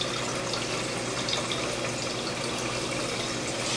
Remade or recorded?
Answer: recorded